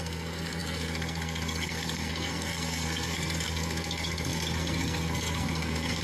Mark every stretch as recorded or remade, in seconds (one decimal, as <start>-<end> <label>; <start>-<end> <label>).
0.0-6.0 remade